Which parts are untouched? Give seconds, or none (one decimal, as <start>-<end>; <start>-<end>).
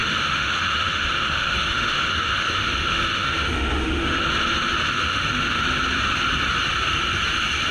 4.2-4.8; 5.6-7.7